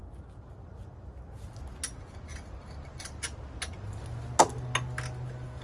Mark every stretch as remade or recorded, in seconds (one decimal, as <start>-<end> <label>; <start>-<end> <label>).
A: 0.0-5.6 recorded